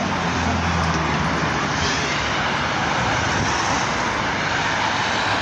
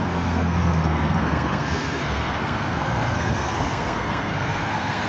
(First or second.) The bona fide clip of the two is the first